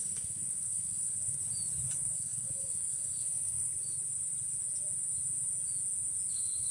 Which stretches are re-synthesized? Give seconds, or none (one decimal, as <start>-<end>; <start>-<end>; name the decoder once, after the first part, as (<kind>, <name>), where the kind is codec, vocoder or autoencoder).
0.0-1.4 (codec, SNAC); 2.0-3.7; 6.3-6.7